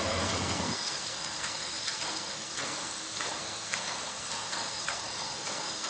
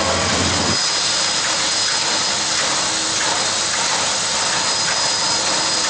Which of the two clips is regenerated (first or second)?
first